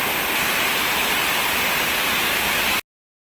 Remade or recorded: recorded